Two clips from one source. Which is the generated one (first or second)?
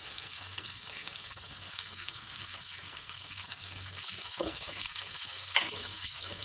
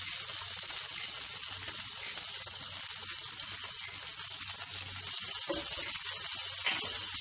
first